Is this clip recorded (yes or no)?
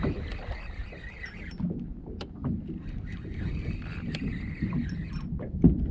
yes